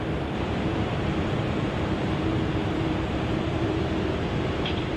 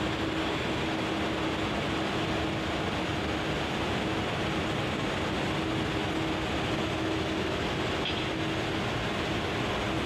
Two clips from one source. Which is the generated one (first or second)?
first